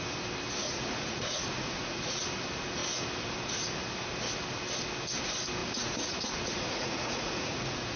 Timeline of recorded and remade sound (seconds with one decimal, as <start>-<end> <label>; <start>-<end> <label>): 0.0-0.6 recorded; 0.6-2.2 remade; 2.2-5.6 recorded; 5.6-8.0 remade